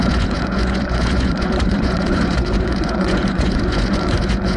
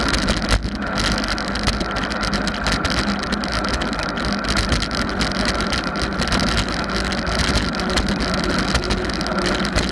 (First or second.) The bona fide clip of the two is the second